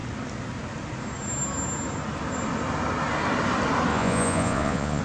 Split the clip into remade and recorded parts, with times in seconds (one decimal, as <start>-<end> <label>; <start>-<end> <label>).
0.0-3.9 recorded; 3.9-5.0 remade